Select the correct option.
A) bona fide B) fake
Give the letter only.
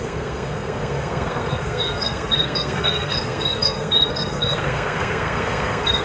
B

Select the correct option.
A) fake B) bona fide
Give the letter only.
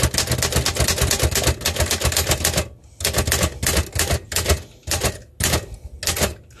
B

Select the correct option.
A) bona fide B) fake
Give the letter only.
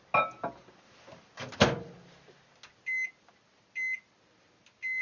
A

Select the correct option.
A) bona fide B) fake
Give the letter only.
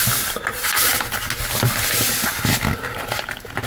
A